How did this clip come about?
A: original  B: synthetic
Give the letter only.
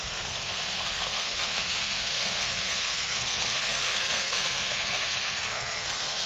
B